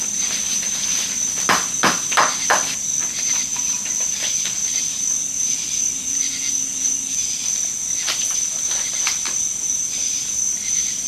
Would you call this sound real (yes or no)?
no